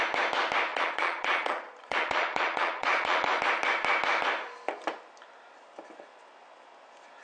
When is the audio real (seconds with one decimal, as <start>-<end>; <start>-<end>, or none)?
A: 0.0-0.7; 3.4-7.2